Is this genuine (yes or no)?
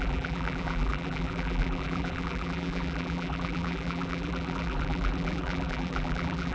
no